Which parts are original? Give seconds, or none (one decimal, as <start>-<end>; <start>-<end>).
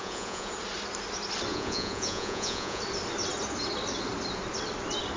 0.5-1.5; 2.8-5.2